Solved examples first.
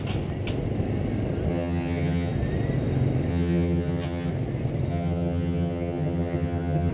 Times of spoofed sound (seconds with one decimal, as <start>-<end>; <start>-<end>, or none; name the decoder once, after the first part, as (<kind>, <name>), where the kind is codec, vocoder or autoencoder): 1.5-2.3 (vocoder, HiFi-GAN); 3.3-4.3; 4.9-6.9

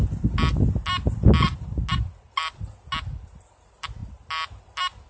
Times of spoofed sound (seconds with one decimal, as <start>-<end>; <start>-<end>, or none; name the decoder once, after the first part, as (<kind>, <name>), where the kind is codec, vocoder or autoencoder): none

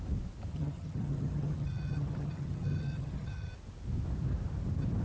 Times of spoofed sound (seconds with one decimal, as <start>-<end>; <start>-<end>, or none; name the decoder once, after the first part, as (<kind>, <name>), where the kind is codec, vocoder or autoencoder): 0.5-3.5 (vocoder, HiFi-GAN)

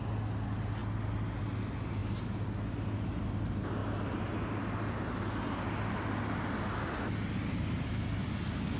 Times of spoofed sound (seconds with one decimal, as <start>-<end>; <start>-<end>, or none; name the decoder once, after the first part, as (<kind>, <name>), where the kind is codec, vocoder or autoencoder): none

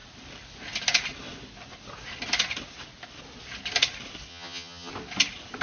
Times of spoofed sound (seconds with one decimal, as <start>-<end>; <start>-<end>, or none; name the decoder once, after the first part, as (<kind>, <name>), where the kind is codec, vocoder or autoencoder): 4.3-4.9 (vocoder, HiFi-GAN)

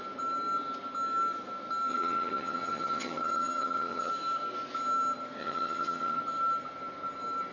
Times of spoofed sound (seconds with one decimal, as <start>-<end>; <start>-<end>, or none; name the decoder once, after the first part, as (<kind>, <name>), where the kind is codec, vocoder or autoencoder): 1.9-4.1 (vocoder, HiFi-GAN); 5.4-6.2

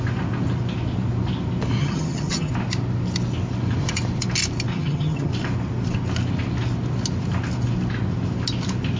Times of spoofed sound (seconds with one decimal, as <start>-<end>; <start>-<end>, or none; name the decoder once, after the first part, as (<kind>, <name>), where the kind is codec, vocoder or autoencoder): 1.8-2.5 (vocoder, HiFi-GAN); 4.7-5.3